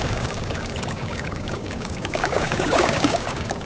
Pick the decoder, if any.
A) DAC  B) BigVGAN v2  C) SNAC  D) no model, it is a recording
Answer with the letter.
A